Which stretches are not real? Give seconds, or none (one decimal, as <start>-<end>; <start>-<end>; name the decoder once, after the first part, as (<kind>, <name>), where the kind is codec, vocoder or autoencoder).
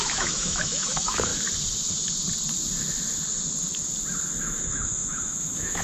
0.0-1.3 (autoencoder, DAC-VAE); 4.4-5.8